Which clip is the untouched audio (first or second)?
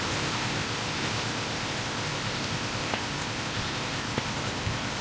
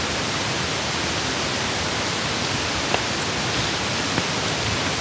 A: second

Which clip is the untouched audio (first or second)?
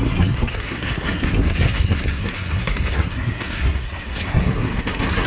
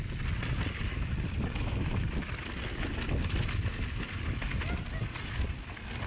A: second